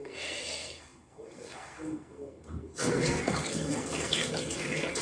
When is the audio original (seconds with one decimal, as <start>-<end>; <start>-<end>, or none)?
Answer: none